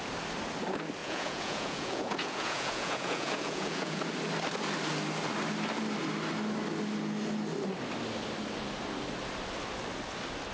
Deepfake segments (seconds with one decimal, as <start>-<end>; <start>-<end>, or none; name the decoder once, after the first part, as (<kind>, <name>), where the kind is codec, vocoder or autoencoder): 1.0-4.0 (vocoder, Vocos)